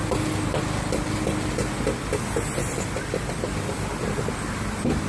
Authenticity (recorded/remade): recorded